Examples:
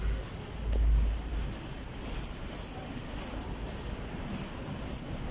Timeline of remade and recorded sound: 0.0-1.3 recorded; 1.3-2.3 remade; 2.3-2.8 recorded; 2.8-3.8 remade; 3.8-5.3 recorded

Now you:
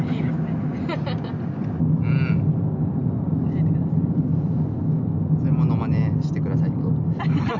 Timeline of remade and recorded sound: 0.0-7.6 recorded

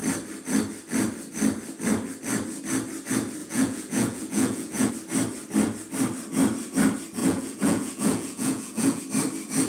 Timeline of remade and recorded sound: 0.0-3.4 recorded; 3.4-4.9 remade; 4.9-7.2 recorded; 7.2-9.0 remade; 9.0-9.7 recorded